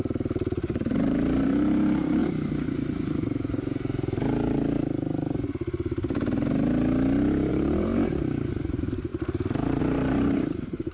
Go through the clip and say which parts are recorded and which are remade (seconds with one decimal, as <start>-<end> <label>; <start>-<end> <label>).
0.0-2.2 remade; 2.2-7.5 recorded; 7.5-10.9 remade